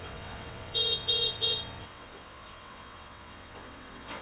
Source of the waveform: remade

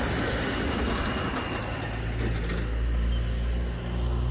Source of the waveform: recorded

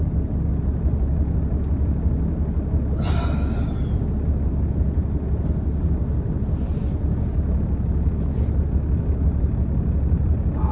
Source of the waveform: recorded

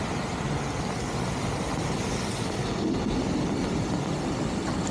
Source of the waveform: recorded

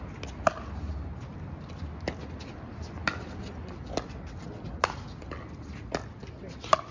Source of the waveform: recorded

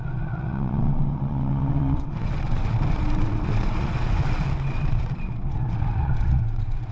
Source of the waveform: remade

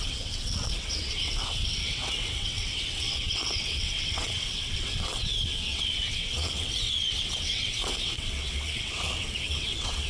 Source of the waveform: remade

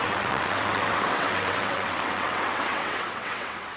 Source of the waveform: remade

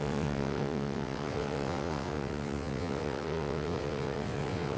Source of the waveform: remade